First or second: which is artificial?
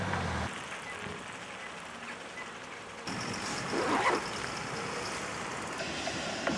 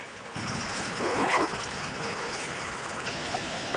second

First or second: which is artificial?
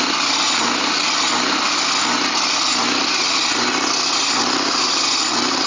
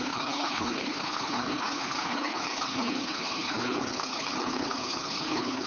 second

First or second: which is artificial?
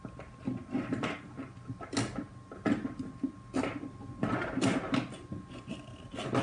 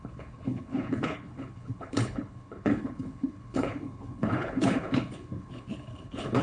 second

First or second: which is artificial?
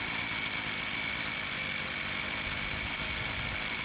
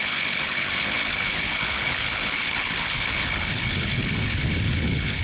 second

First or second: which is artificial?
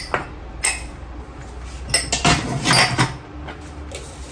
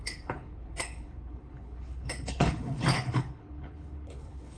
second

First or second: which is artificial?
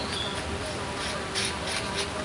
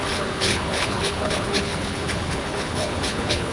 second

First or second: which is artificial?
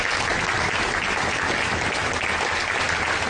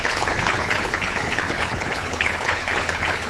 second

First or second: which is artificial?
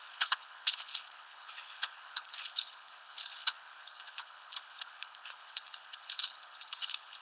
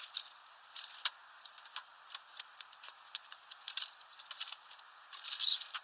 first